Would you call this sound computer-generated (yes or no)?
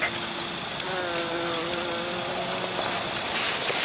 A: no